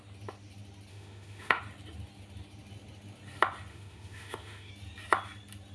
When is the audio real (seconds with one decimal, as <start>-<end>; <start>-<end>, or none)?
0.0-0.9; 1.6-3.7; 4.7-5.7